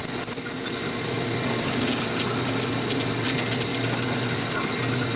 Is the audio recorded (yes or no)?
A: yes